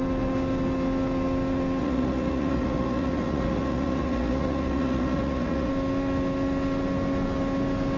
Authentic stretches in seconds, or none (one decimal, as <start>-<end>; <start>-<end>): 0.0-1.8; 5.7-8.0